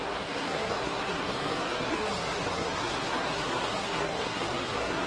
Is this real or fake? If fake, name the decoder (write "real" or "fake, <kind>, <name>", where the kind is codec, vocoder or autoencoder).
fake, codec, SNAC